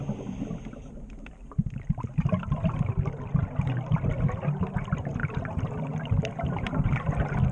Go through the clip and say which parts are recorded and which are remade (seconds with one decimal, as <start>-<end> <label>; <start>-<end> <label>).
0.0-5.2 recorded; 5.2-5.7 remade; 5.7-7.5 recorded